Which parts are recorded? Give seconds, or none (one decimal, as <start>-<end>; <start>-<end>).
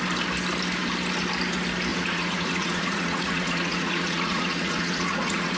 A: 0.0-1.9